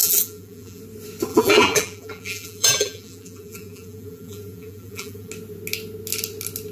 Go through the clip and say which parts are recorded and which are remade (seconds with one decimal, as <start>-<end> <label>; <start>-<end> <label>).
0.0-0.8 remade; 0.8-1.3 recorded; 1.3-5.3 remade; 5.3-6.7 recorded